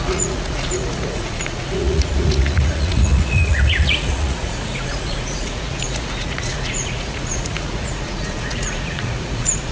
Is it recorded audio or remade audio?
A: remade